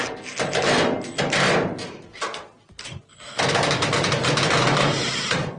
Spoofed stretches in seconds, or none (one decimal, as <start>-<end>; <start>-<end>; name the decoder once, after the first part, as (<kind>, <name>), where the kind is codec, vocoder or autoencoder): 3.1-3.9 (autoencoder, DAC-VAE)